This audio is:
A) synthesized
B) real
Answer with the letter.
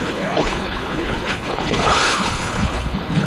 A